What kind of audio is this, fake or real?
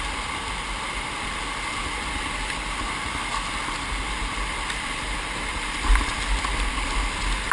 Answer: real